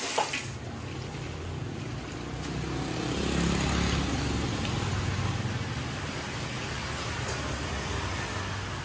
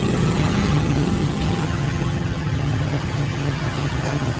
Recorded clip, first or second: first